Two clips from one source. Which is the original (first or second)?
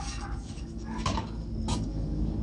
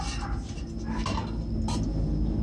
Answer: second